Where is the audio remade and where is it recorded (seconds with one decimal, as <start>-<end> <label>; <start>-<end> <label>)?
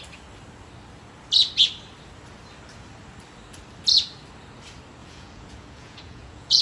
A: 0.0-5.0 recorded; 5.0-6.6 remade